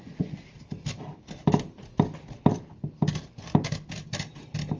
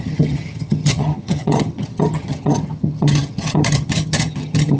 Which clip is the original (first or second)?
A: first